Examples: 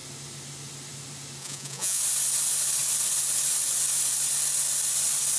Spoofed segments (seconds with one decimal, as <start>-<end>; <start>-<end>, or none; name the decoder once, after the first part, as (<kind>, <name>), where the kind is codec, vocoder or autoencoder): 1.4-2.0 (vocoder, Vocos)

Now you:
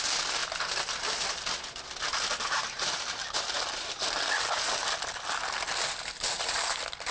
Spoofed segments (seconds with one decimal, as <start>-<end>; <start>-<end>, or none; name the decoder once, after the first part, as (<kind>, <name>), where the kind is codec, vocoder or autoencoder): none

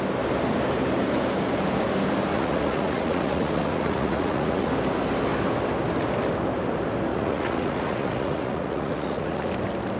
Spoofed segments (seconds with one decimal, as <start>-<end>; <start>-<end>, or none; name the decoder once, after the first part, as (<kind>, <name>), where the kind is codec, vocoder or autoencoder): 2.3-4.7 (vocoder, Vocos); 7.1-9.5

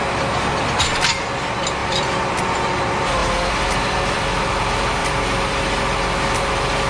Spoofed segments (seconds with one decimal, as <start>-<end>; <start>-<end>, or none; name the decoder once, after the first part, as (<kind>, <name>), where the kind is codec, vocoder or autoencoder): 1.8-2.4 (vocoder, BigVGAN v2); 3.2-4.5; 5.0-5.7

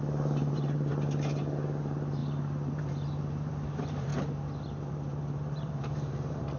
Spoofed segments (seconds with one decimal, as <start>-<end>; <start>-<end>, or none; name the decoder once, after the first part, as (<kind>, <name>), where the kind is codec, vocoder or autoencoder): 0.0-0.9 (vocoder, BigVGAN v2); 1.8-4.1; 4.9-6.6

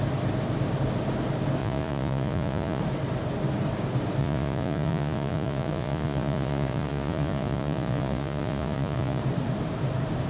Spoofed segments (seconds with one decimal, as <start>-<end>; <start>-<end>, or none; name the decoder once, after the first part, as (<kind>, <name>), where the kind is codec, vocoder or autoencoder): 1.6-2.8 (vocoder, Vocos); 4.2-9.2